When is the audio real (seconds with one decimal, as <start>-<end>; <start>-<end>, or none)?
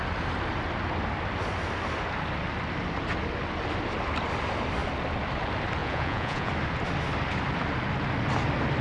0.0-5.8; 6.5-8.8